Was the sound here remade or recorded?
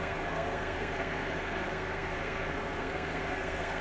remade